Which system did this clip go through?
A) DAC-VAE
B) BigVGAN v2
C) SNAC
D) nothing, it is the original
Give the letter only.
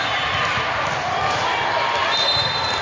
D